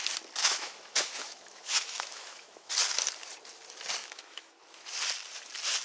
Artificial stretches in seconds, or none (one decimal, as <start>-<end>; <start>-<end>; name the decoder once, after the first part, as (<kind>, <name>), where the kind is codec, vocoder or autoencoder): 0.4-2.7 (autoencoder, DAC-VAE); 4.0-4.6